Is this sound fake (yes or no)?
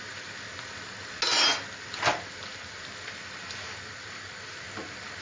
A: no